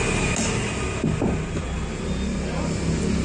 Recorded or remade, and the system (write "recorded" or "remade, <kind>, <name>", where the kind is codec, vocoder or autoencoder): recorded